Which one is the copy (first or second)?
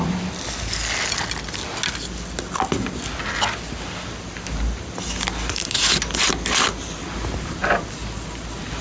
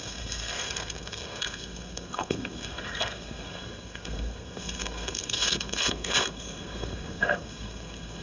second